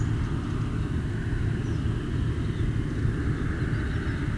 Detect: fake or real real